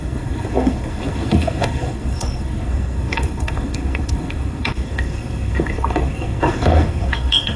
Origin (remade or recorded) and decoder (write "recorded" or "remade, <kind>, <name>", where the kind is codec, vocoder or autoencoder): remade, codec, SNAC